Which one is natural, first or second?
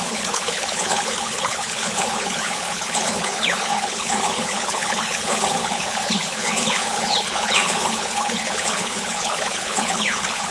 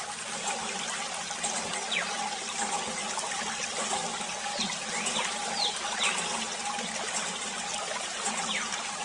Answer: second